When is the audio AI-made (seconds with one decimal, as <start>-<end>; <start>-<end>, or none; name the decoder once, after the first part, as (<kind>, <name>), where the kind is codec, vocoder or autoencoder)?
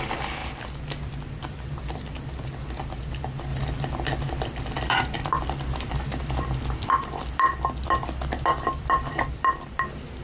0.0-0.4 (vocoder, BigVGAN v2); 3.1-10.2